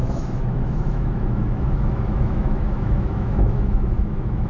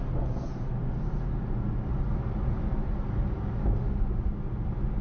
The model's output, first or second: first